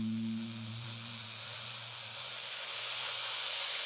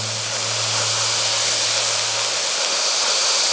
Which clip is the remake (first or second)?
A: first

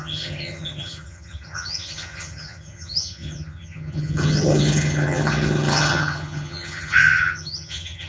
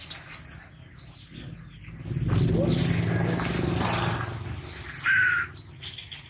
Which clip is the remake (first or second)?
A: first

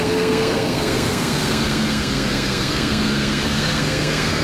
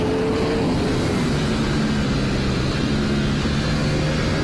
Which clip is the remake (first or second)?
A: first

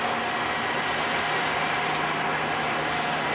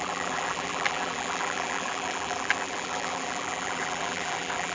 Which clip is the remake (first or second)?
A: second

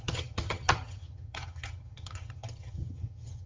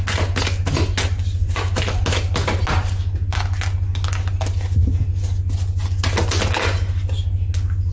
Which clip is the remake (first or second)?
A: first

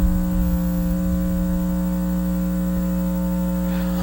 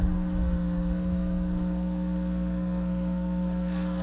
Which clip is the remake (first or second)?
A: second